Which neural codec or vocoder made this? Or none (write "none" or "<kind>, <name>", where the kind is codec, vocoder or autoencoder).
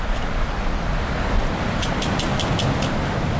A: none